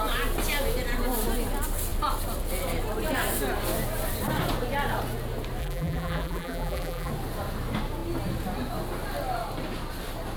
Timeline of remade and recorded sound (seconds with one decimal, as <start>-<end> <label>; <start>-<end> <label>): 0.0-5.6 recorded; 5.6-7.1 remade; 7.1-10.4 recorded